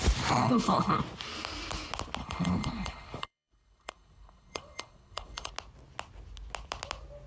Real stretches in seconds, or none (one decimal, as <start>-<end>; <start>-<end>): 0.0-0.4; 1.0-2.2; 5.5-7.3